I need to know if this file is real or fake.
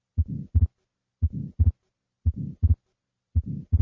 real